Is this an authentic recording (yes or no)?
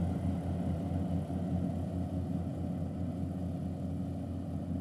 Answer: yes